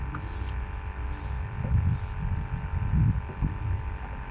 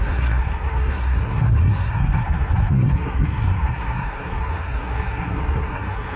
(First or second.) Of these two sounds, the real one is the first